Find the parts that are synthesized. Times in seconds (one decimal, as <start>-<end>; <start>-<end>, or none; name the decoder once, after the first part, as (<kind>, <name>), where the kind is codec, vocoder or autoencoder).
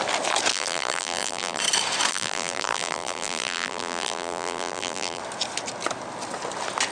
0.5-1.6 (vocoder, BigVGAN v2); 2.1-5.2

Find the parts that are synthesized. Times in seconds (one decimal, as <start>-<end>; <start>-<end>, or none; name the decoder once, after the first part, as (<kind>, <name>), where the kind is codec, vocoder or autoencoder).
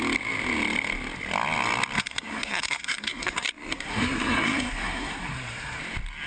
2.0-5.8 (codec, SNAC)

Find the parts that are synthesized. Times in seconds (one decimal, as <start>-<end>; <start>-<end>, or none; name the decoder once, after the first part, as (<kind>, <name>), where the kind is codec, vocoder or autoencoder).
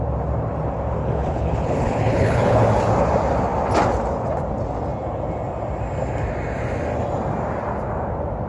1.0-2.6 (codec, HILCodec)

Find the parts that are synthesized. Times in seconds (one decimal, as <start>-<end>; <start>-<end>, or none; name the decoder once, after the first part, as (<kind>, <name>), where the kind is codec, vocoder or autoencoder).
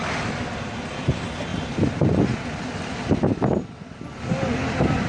none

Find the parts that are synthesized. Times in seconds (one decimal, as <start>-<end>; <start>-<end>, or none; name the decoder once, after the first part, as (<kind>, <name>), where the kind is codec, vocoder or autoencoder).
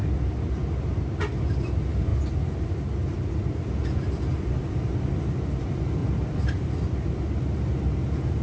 6.0-6.7 (vocoder, BigVGAN v2)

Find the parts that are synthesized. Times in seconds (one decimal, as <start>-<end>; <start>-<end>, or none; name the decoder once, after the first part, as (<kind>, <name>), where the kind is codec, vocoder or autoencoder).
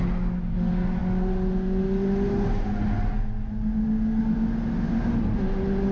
none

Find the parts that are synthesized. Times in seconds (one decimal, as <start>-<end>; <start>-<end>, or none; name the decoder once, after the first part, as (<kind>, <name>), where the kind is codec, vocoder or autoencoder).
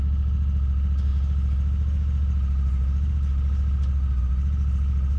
none